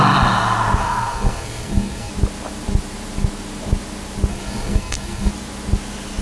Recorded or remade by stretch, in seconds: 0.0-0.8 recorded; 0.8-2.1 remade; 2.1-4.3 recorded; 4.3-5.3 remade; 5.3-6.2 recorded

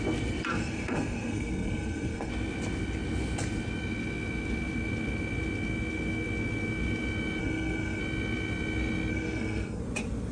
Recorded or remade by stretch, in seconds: 0.0-0.5 recorded; 0.5-2.3 remade; 2.3-7.4 recorded; 7.4-8.0 remade; 8.0-9.1 recorded; 9.1-9.8 remade; 9.8-10.3 recorded

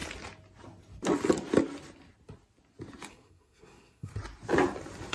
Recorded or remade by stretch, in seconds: 0.0-3.1 recorded; 3.1-4.1 remade; 4.1-5.1 recorded